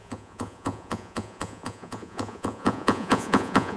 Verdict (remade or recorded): remade